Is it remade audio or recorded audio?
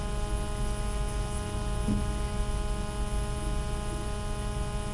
recorded